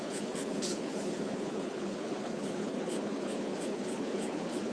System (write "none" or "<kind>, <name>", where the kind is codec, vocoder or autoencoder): codec, HILCodec